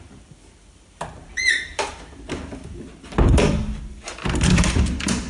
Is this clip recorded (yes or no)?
no